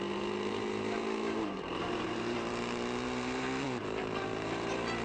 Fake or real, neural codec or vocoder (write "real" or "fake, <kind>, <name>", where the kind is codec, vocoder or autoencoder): fake, vocoder, BigVGAN v2